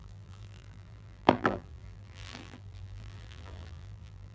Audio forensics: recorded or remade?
remade